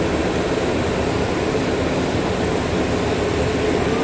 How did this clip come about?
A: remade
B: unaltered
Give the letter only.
B